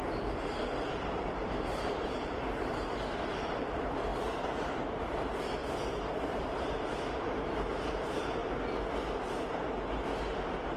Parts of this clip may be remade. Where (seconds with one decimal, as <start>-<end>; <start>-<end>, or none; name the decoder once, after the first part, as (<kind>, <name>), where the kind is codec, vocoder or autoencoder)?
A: 0.0-5.6 (vocoder, BigVGAN v2); 6.4-8.4; 10.2-10.8